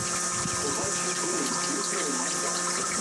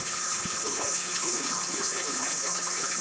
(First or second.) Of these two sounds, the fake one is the second